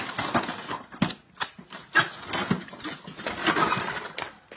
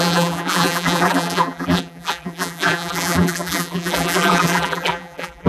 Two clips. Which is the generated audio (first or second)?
second